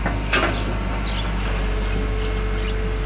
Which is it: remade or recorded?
recorded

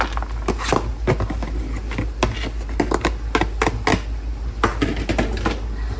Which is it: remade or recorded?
recorded